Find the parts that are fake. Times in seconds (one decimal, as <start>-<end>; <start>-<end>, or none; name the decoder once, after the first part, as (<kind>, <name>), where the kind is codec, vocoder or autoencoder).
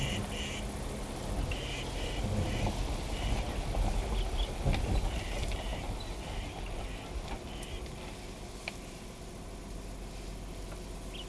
none